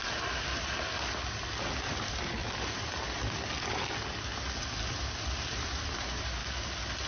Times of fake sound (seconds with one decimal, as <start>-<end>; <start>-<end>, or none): 0.0-0.5; 1.9-2.4; 4.9-7.1